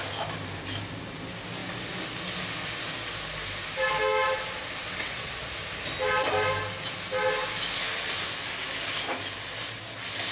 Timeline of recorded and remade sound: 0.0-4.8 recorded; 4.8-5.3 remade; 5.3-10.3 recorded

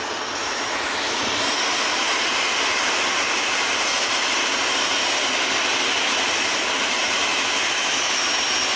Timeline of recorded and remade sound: 0.0-0.4 recorded; 0.4-1.2 remade; 1.2-7.3 recorded; 7.3-8.2 remade; 8.2-8.8 recorded

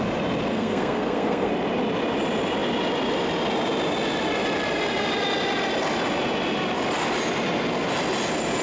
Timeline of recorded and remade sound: 0.0-0.5 recorded; 0.5-1.5 remade; 1.5-8.6 recorded

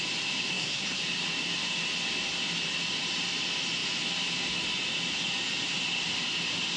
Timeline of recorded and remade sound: 0.0-0.5 recorded; 0.5-1.0 remade; 1.0-6.8 recorded

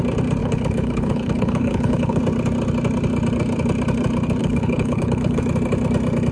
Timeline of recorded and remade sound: 0.0-0.4 recorded; 0.4-2.2 remade; 2.2-4.4 recorded; 4.4-5.4 remade; 5.4-6.3 recorded

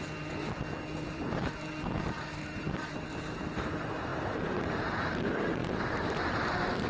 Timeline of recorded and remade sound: 0.0-0.4 remade; 0.4-1.0 recorded; 1.0-6.9 remade

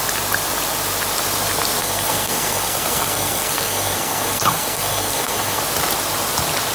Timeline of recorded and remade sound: 0.0-1.8 recorded; 1.8-5.6 remade; 5.6-6.7 recorded